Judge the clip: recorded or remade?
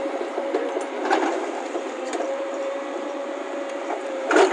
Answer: remade